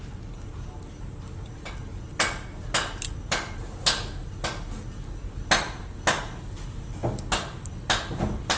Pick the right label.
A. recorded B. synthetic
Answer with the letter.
A